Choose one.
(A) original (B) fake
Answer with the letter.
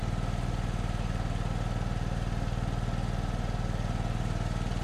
A